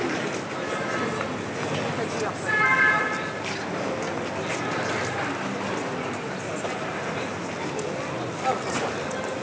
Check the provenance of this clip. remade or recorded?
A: recorded